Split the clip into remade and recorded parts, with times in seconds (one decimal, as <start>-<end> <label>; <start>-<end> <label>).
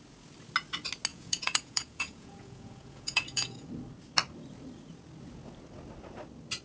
0.0-1.1 recorded; 1.1-3.7 remade; 3.7-6.6 recorded